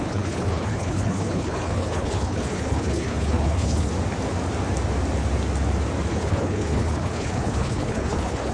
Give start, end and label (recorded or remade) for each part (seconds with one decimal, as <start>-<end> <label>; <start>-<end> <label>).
0.0-3.9 remade; 3.9-6.1 recorded; 6.1-8.5 remade

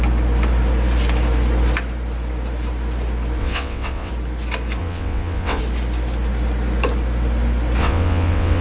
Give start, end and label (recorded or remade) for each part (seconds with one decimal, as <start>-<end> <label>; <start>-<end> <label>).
0.0-3.4 recorded; 3.4-4.1 remade; 4.1-4.8 recorded; 4.8-5.6 remade; 5.6-7.8 recorded; 7.8-8.6 remade

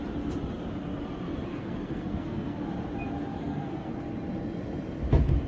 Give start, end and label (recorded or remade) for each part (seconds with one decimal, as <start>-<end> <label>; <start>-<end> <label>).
0.0-1.5 recorded; 1.5-2.6 remade; 2.6-3.3 recorded; 3.3-3.9 remade; 3.9-5.5 recorded

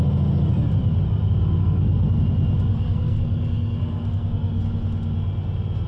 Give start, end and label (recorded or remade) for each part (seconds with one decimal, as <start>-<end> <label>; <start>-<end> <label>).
0.0-1.6 recorded; 1.6-2.2 remade; 2.2-2.7 recorded; 2.7-4.6 remade; 4.6-5.9 recorded

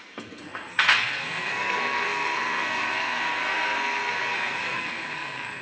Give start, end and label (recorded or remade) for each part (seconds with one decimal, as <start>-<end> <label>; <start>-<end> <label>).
0.0-5.6 remade

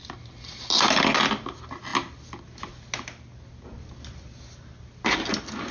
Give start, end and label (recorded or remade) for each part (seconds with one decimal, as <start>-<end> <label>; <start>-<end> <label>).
0.0-5.7 recorded